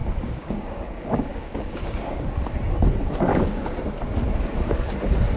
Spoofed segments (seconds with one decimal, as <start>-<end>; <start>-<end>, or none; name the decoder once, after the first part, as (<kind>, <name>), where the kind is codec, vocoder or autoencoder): 0.0-2.3 (codec, DAC); 3.3-3.8

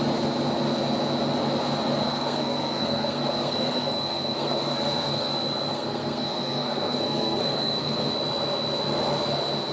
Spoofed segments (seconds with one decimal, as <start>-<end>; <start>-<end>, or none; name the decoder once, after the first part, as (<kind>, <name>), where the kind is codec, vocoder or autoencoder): 2.0-5.3 (codec, SNAC); 5.7-8.1

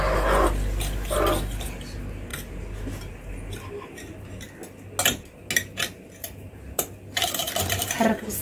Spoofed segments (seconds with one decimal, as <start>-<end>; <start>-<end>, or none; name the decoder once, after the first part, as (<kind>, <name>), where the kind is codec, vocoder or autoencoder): 6.2-6.8 (vocoder, BigVGAN v2)

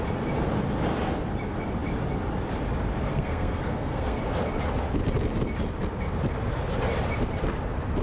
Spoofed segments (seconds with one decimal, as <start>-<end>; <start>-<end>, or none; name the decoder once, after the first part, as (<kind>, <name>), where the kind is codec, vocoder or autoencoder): 3.1-4.2 (codec, SNAC)